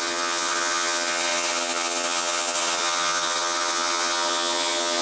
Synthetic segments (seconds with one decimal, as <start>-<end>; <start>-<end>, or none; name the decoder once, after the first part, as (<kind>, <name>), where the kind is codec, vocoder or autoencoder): 0.0-5.0 (vocoder, HiFi-GAN)